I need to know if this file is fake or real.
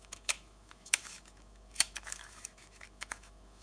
fake